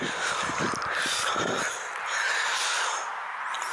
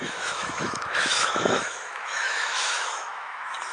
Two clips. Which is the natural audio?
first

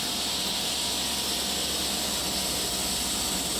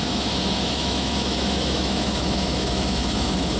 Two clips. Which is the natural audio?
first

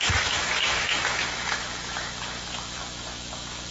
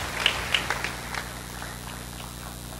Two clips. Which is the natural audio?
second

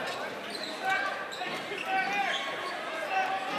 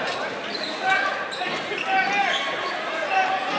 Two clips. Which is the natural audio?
first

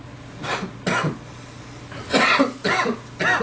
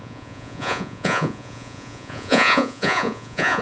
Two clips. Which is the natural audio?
first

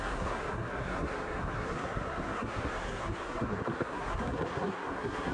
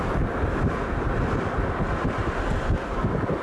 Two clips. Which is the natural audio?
second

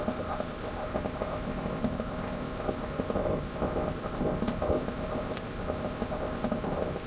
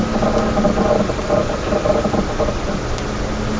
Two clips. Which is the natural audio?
second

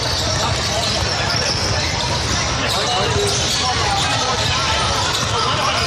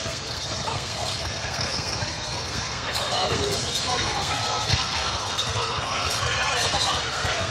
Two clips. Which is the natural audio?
first